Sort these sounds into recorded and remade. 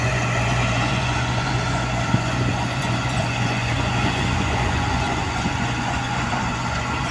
remade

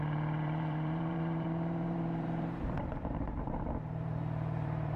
remade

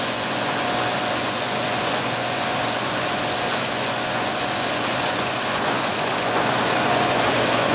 remade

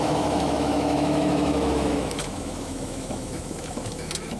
remade